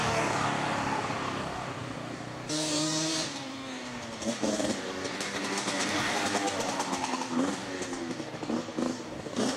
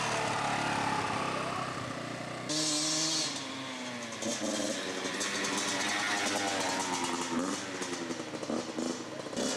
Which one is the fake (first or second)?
first